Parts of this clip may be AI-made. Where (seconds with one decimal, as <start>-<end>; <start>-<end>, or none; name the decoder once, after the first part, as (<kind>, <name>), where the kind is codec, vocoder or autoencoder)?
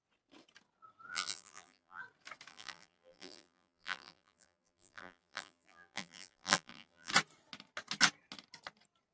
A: 1.1-2.0 (vocoder, BigVGAN v2); 2.5-7.1